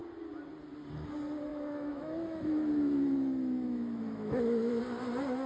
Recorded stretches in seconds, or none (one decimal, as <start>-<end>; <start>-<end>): 0.0-1.5; 4.8-5.5